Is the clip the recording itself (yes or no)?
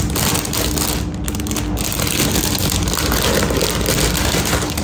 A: yes